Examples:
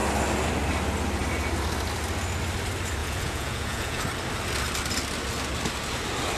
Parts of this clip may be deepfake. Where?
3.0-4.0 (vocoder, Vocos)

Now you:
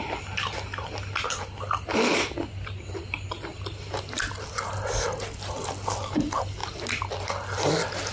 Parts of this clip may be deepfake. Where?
3.5-4.0 (vocoder, BigVGAN v2)

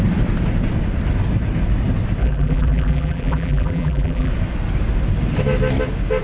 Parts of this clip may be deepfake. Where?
2.2-4.3 (vocoder, BigVGAN v2)

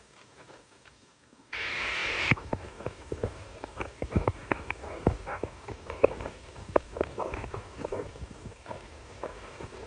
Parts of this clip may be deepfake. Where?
0.0-9.9 (codec, DAC)

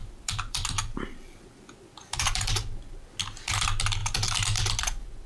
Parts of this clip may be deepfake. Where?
0.0-3.2 (vocoder, BigVGAN v2)